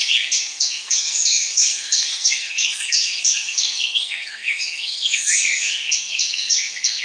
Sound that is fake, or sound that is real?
fake